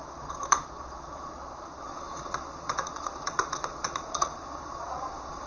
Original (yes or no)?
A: no